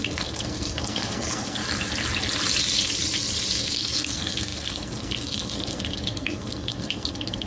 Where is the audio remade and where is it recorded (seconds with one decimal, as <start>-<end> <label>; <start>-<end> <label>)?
0.0-1.6 remade; 1.6-3.6 recorded; 3.6-7.5 remade